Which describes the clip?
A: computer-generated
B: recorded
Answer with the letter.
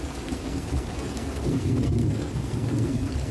A